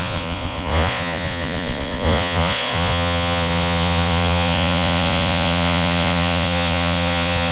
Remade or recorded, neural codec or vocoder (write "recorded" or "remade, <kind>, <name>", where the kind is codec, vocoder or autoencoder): remade, vocoder, Vocos